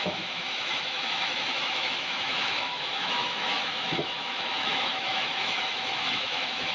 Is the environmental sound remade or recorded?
remade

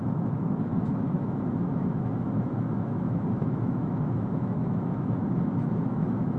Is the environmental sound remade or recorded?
remade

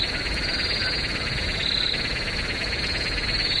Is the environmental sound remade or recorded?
recorded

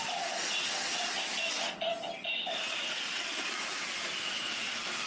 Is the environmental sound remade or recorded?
recorded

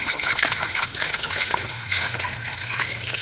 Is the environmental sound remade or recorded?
remade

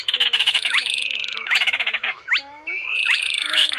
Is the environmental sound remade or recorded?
remade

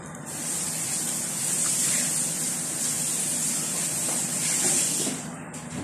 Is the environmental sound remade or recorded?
recorded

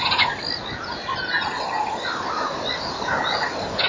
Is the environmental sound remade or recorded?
recorded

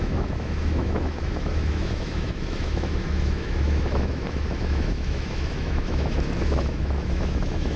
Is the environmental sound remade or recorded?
remade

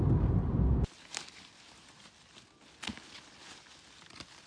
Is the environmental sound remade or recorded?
recorded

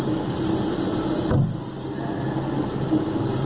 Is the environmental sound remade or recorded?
recorded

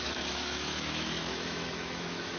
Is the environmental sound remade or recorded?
remade